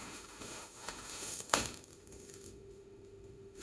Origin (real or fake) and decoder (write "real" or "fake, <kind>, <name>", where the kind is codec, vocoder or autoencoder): fake, autoencoder, DAC-VAE